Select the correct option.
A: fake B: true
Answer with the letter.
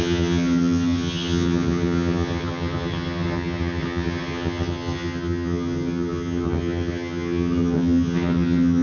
A